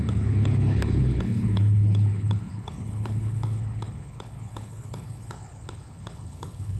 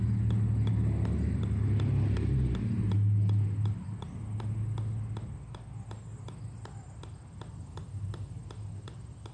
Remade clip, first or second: first